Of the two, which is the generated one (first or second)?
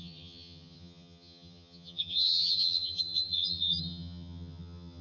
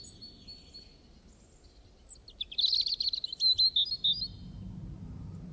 first